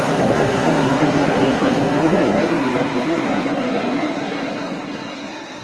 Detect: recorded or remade remade